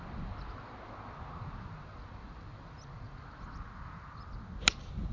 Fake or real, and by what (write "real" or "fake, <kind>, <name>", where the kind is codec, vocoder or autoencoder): real